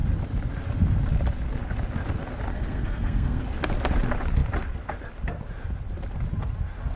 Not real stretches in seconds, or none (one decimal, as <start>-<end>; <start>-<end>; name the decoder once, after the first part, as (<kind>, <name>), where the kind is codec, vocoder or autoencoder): 2.5-3.4 (codec, SNAC)